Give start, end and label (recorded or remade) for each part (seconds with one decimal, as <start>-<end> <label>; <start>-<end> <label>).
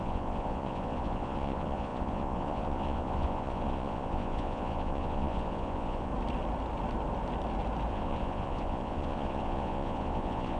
0.0-6.1 remade; 6.1-7.9 recorded; 7.9-10.6 remade